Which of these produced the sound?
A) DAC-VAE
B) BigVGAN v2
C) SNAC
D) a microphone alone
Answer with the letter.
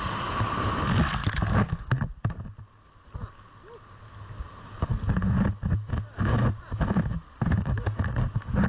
D